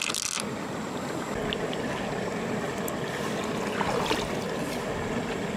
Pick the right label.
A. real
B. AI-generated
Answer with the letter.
A